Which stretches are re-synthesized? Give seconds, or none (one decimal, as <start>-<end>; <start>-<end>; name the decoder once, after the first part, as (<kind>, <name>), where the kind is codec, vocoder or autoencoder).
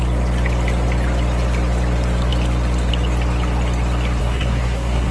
4.2-5.1 (codec, SNAC)